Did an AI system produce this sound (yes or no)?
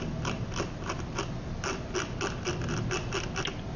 no